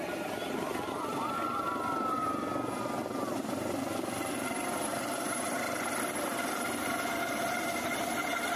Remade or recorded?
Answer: recorded